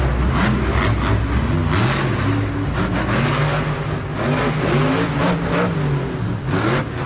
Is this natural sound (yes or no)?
yes